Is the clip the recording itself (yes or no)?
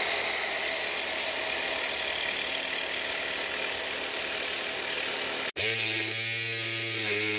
yes